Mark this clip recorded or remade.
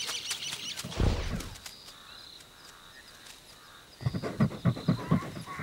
recorded